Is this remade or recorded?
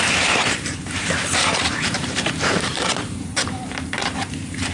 remade